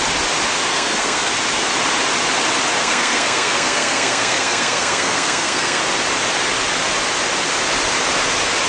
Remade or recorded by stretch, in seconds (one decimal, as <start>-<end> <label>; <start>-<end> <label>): 0.0-0.7 recorded; 0.7-1.3 remade; 1.3-2.8 recorded; 2.8-5.8 remade; 5.8-8.7 recorded